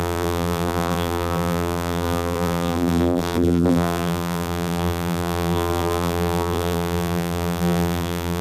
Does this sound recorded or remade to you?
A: remade